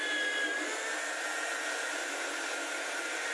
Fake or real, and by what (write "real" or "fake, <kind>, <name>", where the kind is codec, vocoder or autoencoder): real